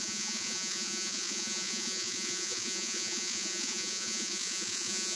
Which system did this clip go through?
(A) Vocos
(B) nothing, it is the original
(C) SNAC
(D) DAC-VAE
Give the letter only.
A